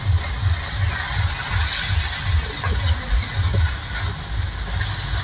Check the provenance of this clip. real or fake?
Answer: real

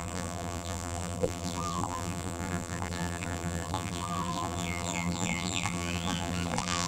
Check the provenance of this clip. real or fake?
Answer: fake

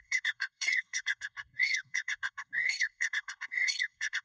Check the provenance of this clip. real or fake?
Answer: fake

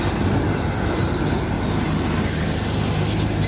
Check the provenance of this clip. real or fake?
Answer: real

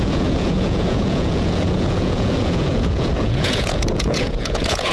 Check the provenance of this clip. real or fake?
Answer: fake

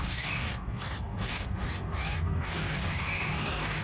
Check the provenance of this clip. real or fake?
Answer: fake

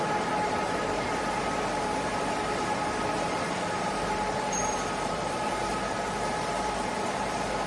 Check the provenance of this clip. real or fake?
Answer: fake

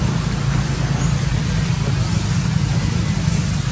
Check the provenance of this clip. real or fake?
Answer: real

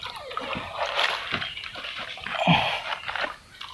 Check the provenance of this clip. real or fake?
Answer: real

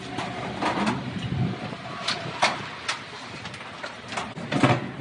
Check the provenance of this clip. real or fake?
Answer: real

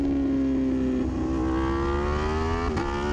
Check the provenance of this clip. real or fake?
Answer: real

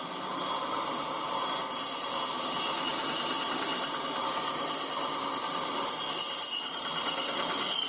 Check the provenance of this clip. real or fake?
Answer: real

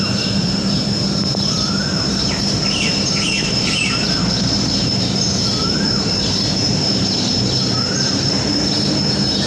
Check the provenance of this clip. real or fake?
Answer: fake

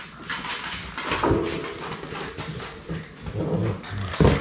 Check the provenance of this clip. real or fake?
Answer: real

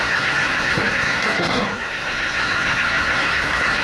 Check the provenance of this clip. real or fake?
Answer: fake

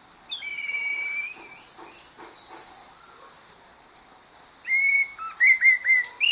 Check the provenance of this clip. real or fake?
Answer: real